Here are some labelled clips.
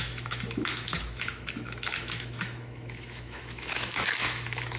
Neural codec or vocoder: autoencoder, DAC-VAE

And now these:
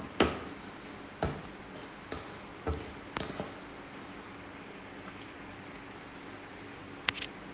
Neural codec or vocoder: none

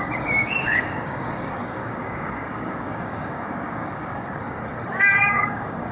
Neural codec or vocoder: codec, DAC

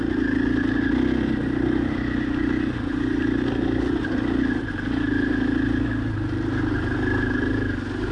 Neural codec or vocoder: none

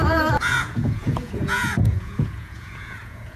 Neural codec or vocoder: vocoder, Vocos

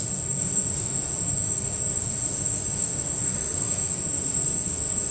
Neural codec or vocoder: autoencoder, DAC-VAE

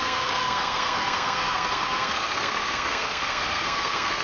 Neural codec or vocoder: codec, SNAC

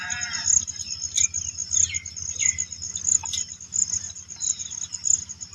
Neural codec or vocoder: none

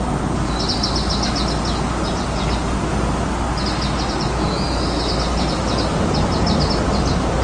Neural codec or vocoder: none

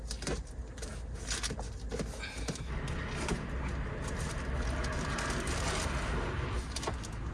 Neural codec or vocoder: none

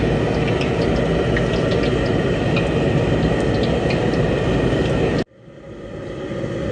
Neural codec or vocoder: none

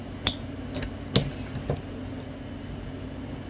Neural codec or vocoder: none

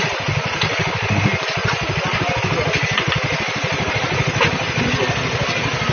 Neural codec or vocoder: none